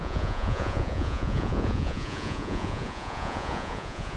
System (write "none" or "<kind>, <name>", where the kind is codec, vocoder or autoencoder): vocoder, Vocos